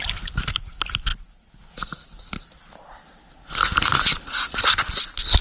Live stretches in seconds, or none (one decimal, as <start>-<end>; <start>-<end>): 0.0-5.4